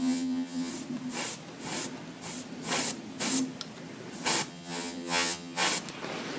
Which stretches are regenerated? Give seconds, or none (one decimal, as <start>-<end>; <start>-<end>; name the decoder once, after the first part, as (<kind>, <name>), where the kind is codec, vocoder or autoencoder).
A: 0.0-0.7 (vocoder, HiFi-GAN); 4.5-5.6